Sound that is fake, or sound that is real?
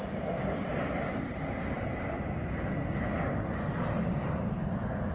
real